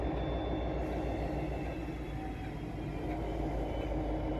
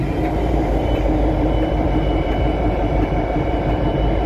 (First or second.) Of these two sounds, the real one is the first